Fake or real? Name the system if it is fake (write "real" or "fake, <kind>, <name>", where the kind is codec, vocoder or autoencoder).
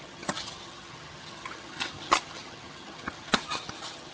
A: fake, vocoder, HiFi-GAN